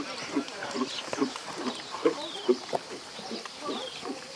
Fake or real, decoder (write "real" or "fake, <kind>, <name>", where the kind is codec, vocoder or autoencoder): fake, vocoder, BigVGAN v2